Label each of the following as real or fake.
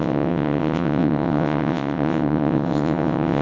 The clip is fake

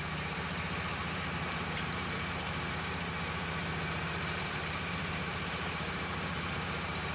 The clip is fake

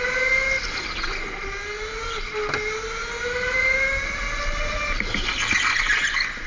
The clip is real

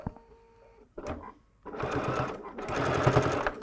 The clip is real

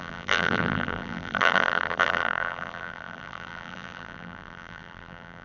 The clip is fake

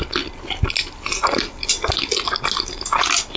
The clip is real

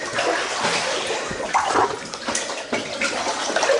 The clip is fake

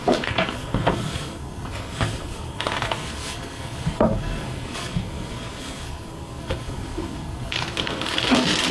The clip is fake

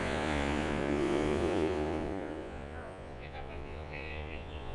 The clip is fake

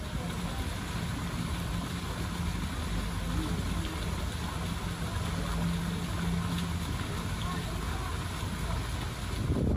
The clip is real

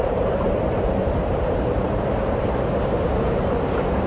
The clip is fake